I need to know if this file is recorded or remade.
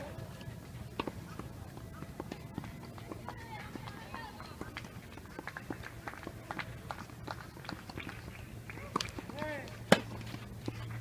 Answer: recorded